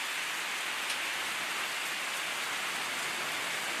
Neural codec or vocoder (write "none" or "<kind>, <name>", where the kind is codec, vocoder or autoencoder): vocoder, BigVGAN v2